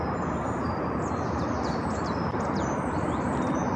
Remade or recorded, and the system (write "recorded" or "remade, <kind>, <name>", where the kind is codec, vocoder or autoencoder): recorded